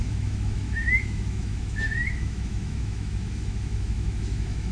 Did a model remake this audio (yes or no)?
yes